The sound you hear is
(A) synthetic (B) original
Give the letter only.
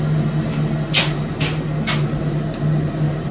B